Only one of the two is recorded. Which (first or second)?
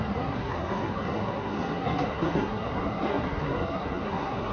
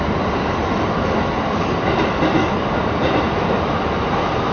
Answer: second